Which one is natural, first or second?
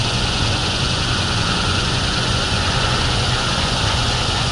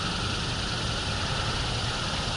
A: second